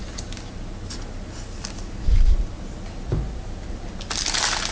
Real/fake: real